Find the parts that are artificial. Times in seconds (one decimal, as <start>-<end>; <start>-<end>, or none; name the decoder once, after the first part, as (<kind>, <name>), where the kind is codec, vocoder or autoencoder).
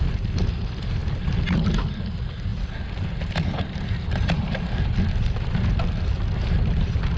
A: none